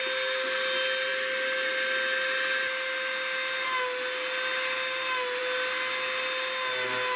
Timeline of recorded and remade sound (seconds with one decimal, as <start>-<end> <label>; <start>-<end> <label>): 0.0-7.2 recorded